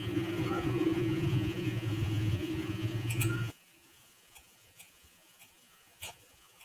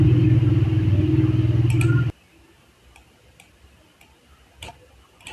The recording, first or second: second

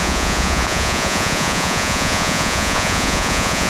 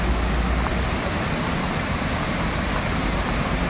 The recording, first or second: second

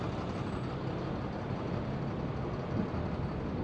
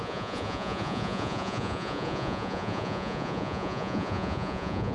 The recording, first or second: first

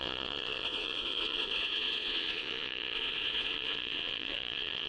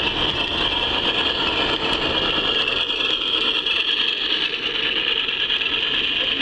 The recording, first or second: second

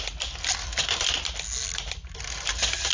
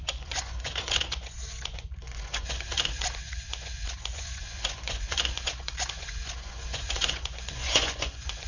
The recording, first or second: first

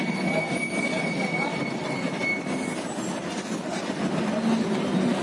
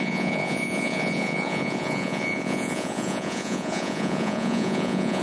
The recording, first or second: first